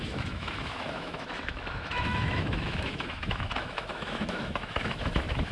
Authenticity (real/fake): fake